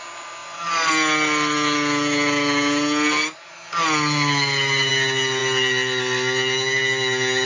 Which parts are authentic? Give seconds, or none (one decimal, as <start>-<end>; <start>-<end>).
0.0-7.5